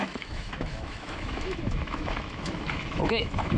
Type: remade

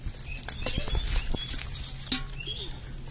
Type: recorded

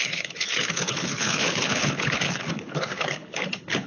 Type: remade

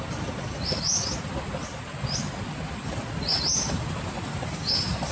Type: recorded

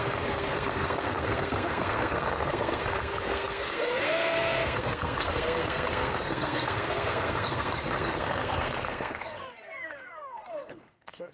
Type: remade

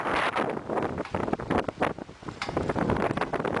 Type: recorded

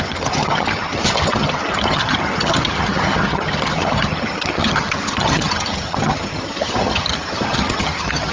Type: remade